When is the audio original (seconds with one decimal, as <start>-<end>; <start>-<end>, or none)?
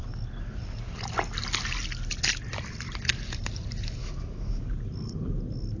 0.0-4.0; 4.6-5.8